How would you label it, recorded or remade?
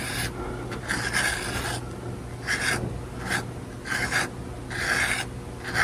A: recorded